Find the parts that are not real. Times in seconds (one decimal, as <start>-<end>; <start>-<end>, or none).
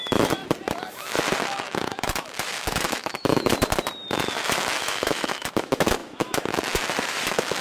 0.0-0.4; 0.9-3.5; 4.1-7.6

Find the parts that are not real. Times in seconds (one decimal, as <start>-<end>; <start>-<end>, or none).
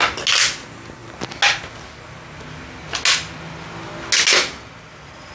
none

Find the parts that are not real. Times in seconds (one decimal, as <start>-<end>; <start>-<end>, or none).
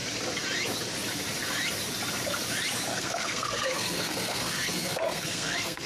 2.9-5.9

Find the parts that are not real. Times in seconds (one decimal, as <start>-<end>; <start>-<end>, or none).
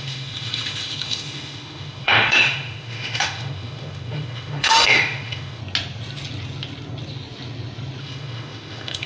0.0-5.6; 8.0-9.1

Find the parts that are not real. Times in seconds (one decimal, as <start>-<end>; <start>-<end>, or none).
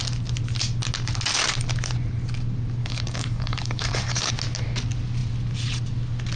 2.8-4.3